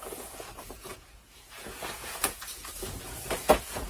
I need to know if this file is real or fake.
fake